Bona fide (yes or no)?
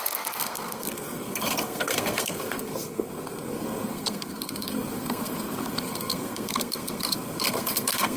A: no